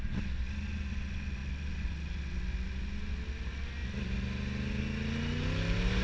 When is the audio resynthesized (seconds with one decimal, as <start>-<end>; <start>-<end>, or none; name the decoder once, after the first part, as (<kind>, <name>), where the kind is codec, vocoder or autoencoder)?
none

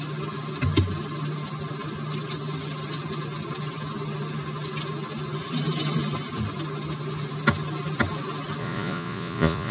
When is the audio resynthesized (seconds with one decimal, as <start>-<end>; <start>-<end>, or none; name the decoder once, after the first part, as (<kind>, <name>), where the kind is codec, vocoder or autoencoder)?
8.6-9.7 (vocoder, Vocos)

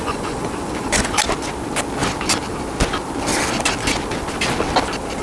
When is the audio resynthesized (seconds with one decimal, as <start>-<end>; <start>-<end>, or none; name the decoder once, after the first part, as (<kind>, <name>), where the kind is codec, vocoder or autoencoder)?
0.0-1.2 (vocoder, Vocos)

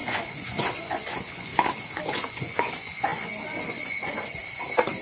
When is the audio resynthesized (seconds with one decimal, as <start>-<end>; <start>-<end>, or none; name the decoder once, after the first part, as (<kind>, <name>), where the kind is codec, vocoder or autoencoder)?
0.0-1.5 (vocoder, Vocos); 2.0-4.4